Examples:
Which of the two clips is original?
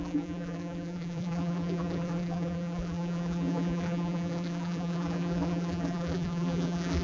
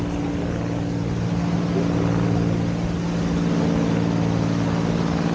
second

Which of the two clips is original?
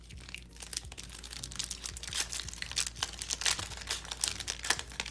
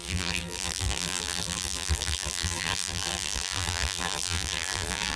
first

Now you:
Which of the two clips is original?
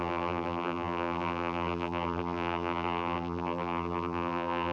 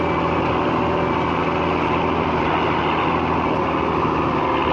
second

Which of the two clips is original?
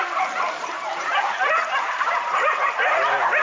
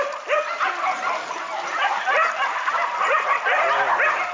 second